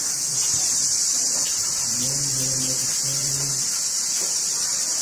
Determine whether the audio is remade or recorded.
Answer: remade